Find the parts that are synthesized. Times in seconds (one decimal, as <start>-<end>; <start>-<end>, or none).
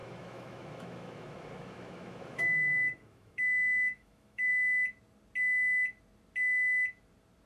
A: 0.0-4.5